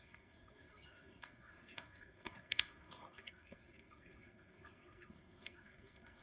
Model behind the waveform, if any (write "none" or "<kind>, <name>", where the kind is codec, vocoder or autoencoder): codec, SNAC